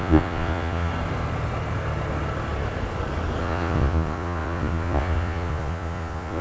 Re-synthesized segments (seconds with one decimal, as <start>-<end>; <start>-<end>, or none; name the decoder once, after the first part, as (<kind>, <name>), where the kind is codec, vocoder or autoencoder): 0.0-0.9 (vocoder, Vocos); 3.4-6.4